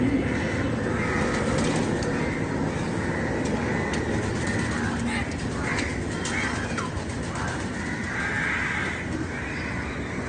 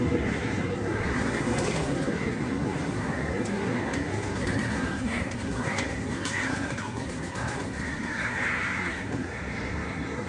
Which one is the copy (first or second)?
second